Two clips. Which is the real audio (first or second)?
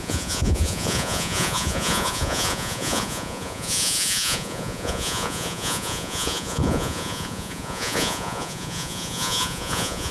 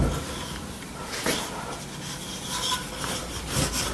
second